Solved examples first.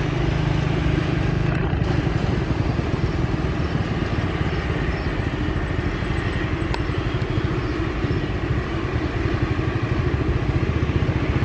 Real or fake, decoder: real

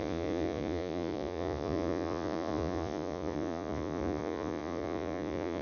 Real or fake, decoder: fake, vocoder, Vocos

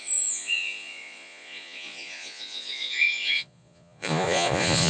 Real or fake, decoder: fake, vocoder, Vocos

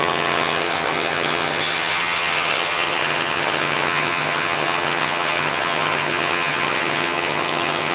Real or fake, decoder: fake, vocoder, HiFi-GAN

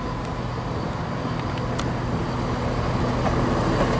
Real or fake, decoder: real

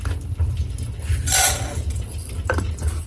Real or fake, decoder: real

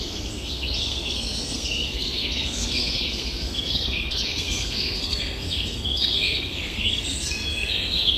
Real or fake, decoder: fake, codec, SNAC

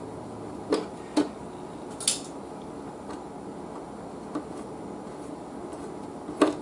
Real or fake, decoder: real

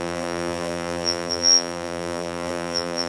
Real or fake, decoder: fake, vocoder, BigVGAN v2